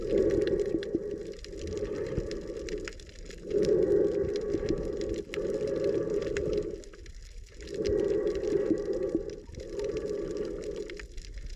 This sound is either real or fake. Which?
real